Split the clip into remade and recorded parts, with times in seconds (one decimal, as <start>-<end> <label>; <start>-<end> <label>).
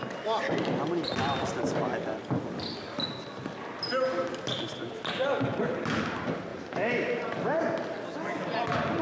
0.0-6.5 recorded; 6.5-7.6 remade; 7.6-9.0 recorded